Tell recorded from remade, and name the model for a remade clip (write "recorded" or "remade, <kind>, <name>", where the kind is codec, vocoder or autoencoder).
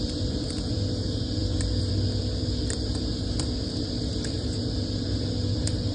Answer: remade, vocoder, BigVGAN v2